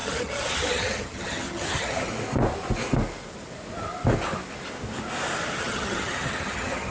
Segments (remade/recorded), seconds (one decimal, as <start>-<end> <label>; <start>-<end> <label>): 0.0-2.1 remade; 2.1-5.6 recorded; 5.6-6.9 remade